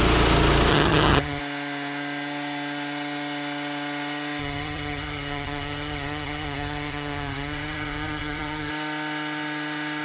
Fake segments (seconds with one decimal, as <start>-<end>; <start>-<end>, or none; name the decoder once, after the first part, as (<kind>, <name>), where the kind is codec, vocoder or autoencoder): 0.7-1.4 (vocoder, HiFi-GAN); 4.4-8.7